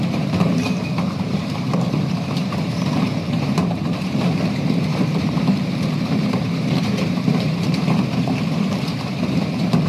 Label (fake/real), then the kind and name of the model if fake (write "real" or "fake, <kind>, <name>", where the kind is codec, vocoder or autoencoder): fake, vocoder, BigVGAN v2